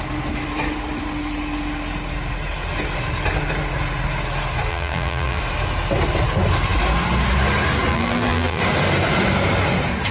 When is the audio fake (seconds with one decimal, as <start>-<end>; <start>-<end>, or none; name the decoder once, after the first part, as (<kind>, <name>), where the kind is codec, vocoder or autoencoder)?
4.7-5.4 (vocoder, BigVGAN v2); 7.9-8.6